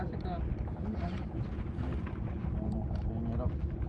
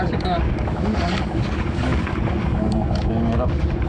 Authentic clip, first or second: first